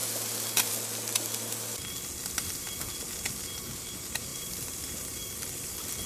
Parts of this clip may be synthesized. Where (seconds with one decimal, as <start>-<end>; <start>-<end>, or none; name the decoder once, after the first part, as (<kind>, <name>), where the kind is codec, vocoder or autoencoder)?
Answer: 4.3-5.5 (vocoder, BigVGAN v2)